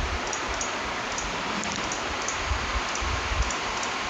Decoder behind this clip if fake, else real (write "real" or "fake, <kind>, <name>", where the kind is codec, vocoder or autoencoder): real